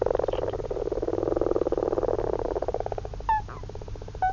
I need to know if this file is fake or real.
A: real